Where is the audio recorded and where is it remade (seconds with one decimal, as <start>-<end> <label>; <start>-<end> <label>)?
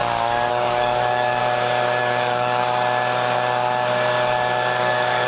0.0-0.5 recorded; 0.5-1.4 remade; 1.4-2.0 recorded; 2.0-2.6 remade; 2.6-4.8 recorded; 4.8-5.3 remade